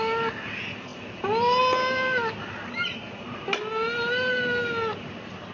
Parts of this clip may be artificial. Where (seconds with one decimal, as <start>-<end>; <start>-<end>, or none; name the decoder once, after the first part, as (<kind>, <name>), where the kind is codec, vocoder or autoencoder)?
none